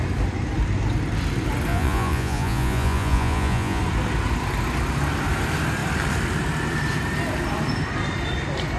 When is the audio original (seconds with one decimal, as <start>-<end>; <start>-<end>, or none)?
0.0-1.7; 3.8-8.8